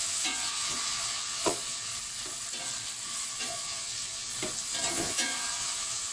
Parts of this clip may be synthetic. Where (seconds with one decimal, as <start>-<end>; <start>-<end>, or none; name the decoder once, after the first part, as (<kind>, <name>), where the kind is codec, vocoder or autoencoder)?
0.0-1.9 (vocoder, Vocos); 3.3-4.3; 4.9-6.1